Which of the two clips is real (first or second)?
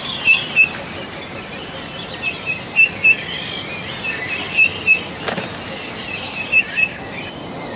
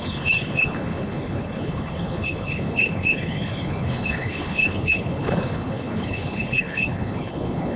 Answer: first